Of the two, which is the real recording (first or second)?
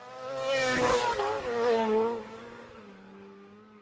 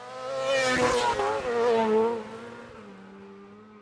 second